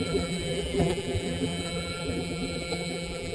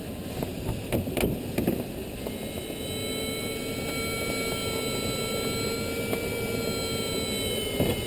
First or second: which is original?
second